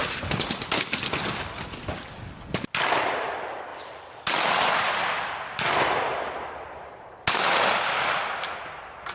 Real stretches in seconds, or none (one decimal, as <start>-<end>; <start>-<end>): 0.0-3.7; 4.9-9.1